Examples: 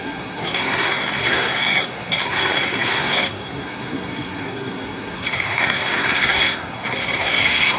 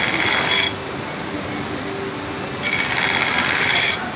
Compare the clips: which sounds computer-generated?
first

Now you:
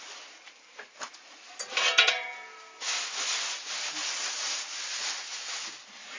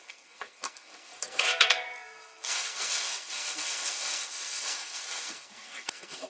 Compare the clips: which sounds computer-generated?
second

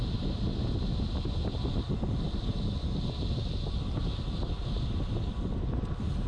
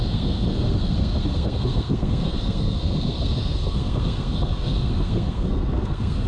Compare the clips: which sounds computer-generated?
second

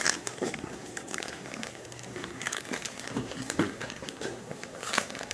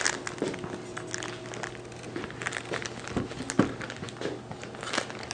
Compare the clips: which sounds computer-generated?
first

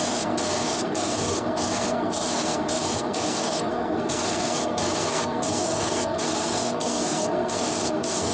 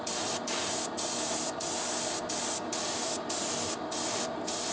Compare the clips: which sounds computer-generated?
first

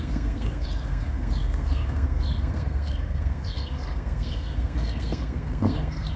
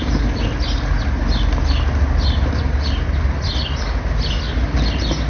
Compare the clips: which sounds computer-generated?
first